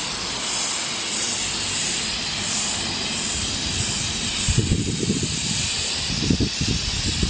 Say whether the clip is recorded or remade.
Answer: recorded